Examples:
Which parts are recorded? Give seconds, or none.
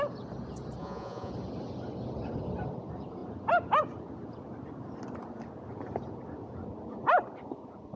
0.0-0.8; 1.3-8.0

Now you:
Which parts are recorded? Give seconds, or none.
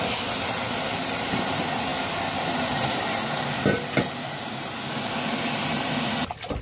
0.0-6.6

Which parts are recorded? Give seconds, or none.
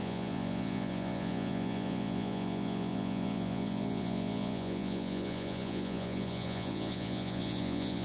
none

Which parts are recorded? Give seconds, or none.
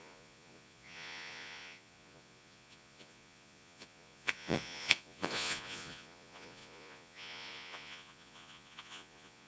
none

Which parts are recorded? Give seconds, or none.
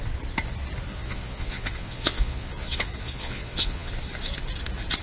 0.0-0.9; 3.9-5.0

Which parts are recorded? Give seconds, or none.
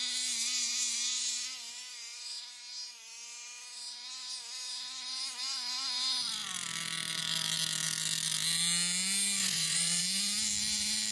0.0-9.4; 10.0-11.1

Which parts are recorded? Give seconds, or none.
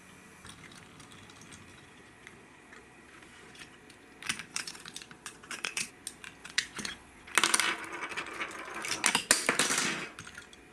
0.0-1.7; 3.8-4.5; 5.9-6.4; 7.3-10.7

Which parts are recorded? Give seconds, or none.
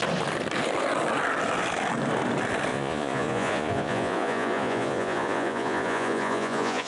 0.0-2.7